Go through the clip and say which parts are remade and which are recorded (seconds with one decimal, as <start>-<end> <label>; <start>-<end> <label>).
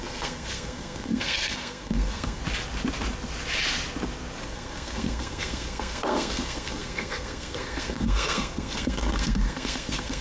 0.0-2.4 remade; 2.4-4.4 recorded; 4.4-10.2 remade